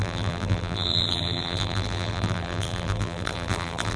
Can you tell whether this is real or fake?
fake